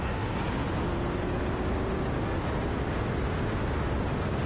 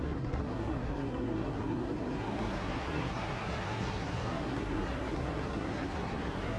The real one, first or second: first